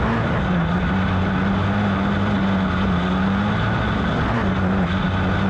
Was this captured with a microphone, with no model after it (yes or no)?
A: yes